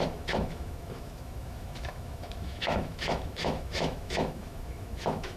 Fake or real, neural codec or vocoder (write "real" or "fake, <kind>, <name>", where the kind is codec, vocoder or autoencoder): fake, autoencoder, DAC-VAE